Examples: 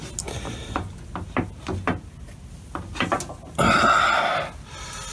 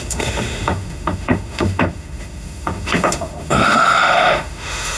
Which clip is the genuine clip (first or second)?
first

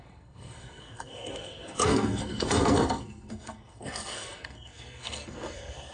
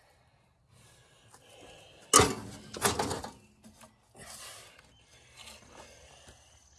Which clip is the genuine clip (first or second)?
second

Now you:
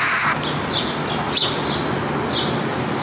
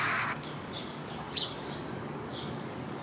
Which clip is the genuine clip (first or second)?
first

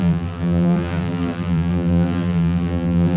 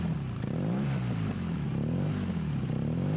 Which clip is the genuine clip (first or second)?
second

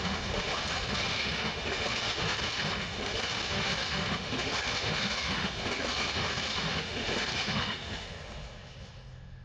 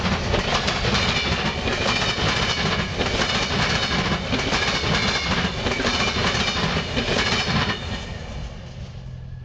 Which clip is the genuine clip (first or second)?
second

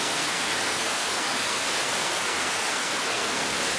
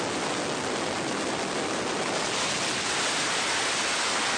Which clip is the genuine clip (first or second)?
second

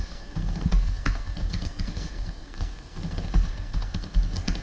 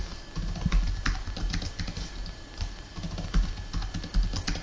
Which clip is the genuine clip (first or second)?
second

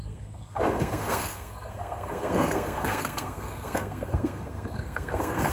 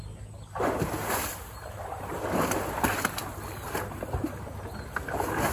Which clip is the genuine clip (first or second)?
second